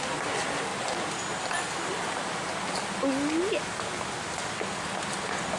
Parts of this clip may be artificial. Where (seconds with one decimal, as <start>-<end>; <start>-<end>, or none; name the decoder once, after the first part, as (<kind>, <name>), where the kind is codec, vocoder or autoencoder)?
none